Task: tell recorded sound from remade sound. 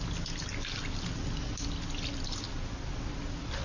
recorded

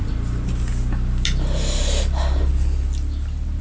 recorded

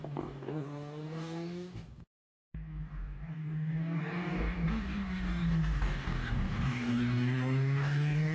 remade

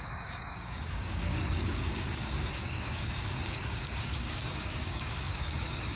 remade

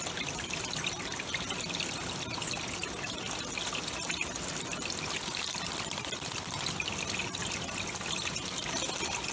recorded